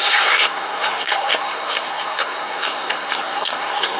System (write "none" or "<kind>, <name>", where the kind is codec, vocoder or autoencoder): codec, SNAC